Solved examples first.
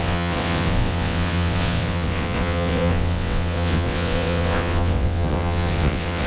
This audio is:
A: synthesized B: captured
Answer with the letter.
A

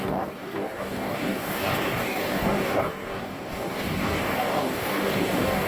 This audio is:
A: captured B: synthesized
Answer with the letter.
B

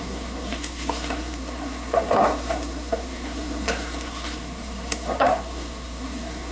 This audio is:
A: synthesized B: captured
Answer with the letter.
A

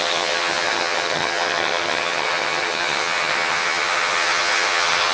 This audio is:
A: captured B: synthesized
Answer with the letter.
B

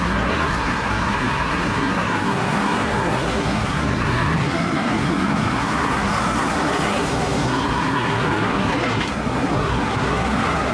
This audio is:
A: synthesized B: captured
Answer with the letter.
A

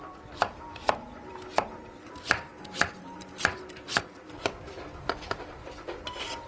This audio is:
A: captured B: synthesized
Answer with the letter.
B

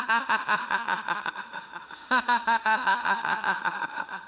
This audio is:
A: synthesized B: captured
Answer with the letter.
A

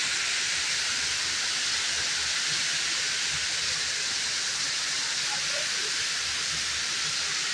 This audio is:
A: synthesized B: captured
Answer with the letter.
B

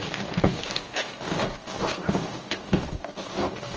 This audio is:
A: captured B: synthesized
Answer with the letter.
B